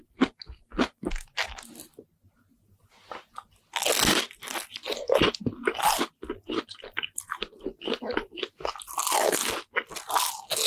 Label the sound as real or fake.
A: real